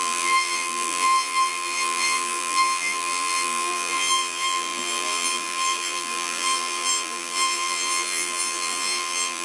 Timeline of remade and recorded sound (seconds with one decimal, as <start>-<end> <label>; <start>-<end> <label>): 0.0-9.4 remade